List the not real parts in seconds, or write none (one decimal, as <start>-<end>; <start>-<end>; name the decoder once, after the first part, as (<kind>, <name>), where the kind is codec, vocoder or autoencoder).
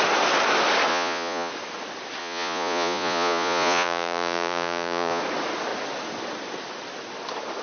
0.9-1.5 (vocoder, Vocos); 2.2-5.2